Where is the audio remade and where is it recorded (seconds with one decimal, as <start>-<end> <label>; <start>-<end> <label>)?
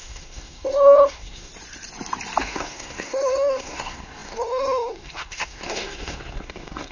0.0-1.5 remade; 1.5-2.4 recorded; 2.4-6.9 remade